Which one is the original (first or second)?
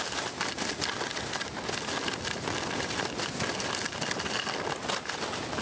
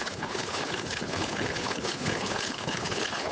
first